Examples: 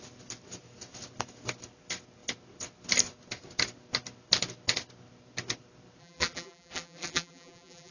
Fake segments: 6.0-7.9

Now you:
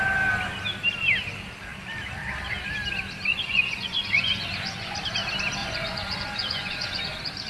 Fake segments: 3.3-5.0; 5.6-7.0

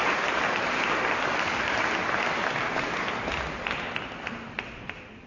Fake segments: none

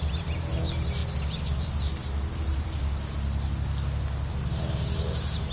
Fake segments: 0.0-1.0; 4.3-5.5

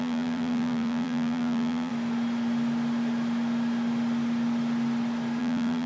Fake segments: 0.0-1.9; 5.4-5.9

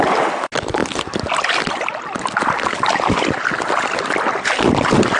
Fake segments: none

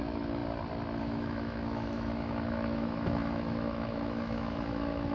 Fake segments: 0.0-0.4; 1.0-5.1

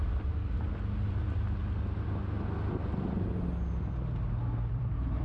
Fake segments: 0.0-1.6; 4.7-5.2